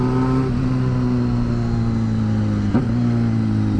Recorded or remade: recorded